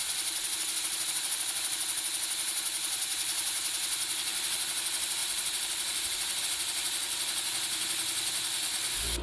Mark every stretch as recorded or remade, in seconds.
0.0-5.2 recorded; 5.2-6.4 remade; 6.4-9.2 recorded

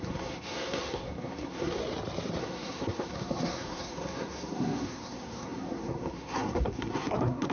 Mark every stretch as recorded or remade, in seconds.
0.0-1.8 remade; 1.8-2.4 recorded; 2.4-7.5 remade